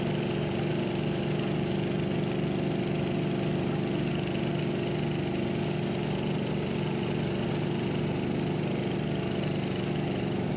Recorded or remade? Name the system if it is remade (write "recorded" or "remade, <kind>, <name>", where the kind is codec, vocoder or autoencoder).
recorded